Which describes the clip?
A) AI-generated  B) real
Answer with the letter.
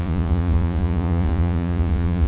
A